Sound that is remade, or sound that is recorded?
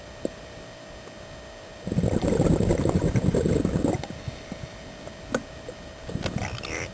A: recorded